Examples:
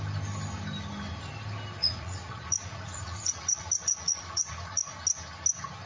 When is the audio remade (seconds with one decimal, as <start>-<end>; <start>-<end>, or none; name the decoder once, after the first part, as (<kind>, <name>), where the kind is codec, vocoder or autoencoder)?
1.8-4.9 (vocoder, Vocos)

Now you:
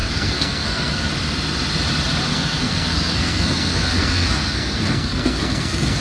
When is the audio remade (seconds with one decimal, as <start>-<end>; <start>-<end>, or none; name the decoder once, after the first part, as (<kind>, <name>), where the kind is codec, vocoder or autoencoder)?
0.0-1.1 (codec, SNAC); 2.3-6.0

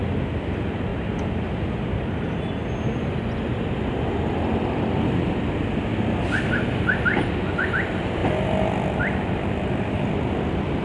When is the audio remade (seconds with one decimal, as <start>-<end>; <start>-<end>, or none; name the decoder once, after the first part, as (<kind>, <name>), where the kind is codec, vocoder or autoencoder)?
none

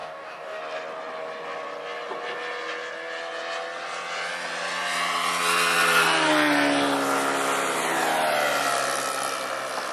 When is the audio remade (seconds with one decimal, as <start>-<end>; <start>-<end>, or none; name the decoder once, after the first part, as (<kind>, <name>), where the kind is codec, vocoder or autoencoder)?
0.0-0.6 (codec, DAC)

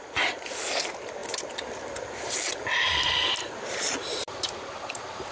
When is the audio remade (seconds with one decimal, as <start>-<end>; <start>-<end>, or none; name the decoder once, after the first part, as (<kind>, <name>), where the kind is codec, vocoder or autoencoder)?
none

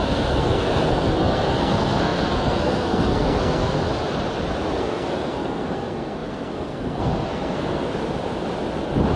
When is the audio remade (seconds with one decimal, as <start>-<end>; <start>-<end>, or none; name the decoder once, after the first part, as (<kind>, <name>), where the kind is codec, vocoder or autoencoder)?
0.0-3.8 (codec, SNAC); 4.7-7.9

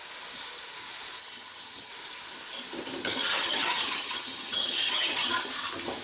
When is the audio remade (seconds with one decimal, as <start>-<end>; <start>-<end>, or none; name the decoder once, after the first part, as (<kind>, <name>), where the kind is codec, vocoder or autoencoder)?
1.2-1.9 (vocoder, HiFi-GAN); 3.0-5.5

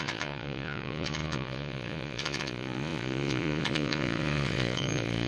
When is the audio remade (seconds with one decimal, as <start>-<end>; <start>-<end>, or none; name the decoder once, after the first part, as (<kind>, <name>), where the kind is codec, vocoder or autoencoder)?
0.0-5.3 (vocoder, Vocos)